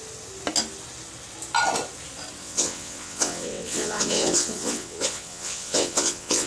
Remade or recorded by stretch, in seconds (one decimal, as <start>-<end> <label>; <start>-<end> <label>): 0.0-2.4 recorded; 2.4-6.5 remade